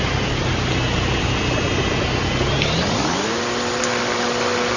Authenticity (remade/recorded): recorded